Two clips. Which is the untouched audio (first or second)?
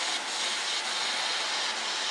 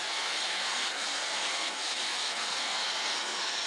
first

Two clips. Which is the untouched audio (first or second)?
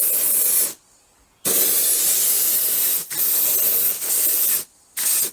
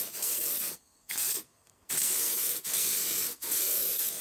first